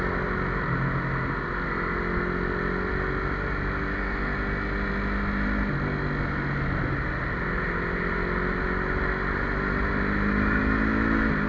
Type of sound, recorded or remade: recorded